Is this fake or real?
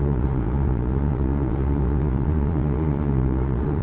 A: fake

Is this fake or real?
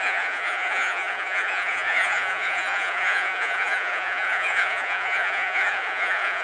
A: fake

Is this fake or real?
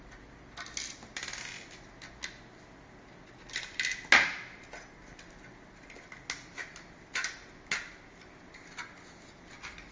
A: real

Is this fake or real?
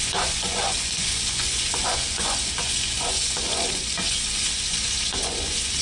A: fake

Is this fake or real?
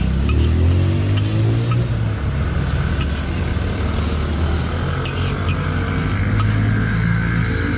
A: real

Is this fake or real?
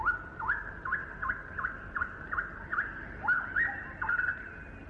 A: real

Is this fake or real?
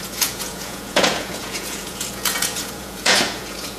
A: fake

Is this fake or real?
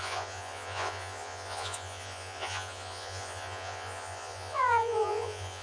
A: fake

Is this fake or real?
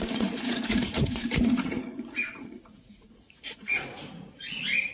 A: fake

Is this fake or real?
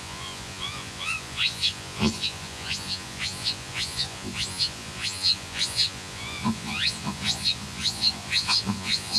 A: fake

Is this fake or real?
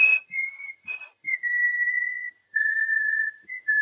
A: fake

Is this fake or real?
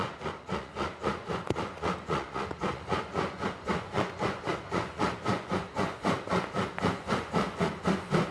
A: fake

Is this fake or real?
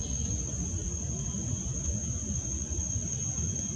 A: fake